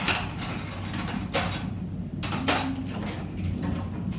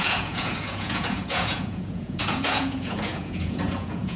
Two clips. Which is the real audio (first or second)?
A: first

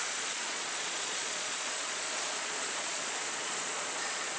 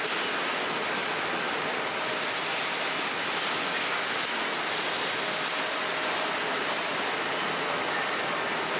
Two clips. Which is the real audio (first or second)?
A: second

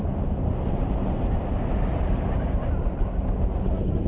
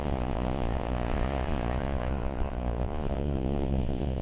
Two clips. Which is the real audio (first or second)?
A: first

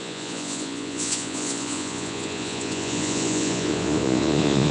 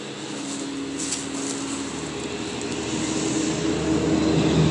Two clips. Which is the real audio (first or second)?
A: second